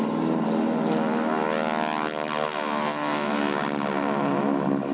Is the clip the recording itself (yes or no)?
yes